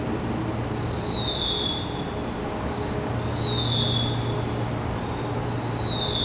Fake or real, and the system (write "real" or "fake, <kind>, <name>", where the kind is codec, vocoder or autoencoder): real